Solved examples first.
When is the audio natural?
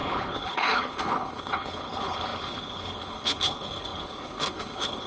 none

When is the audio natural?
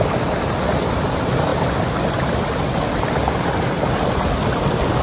0.0-5.0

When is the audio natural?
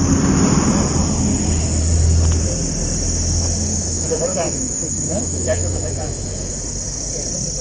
0.0-3.7; 6.5-7.6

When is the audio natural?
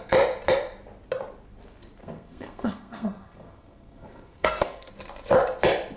0.0-2.0; 4.9-6.0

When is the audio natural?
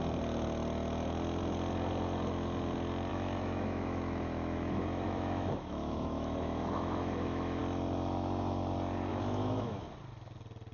0.0-3.1; 7.6-9.1; 9.8-10.7